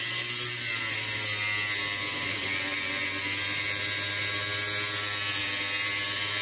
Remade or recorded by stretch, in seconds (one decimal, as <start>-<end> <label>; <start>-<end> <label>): 0.0-6.4 recorded